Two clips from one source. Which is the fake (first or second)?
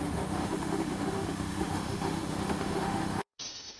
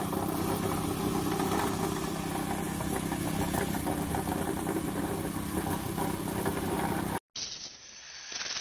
first